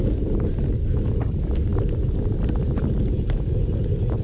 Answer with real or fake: real